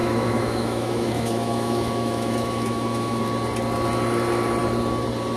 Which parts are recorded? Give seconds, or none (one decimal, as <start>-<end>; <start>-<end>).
3.2-5.4